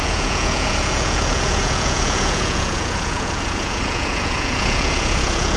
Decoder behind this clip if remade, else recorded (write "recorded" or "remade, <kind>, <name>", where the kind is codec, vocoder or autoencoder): remade, vocoder, Vocos